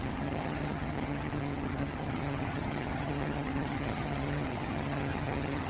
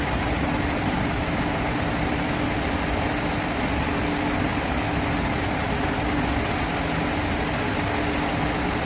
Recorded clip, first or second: second